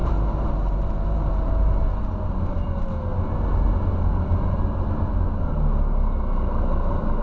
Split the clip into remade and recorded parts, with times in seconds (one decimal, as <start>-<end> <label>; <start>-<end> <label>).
0.0-1.9 remade; 1.9-7.2 recorded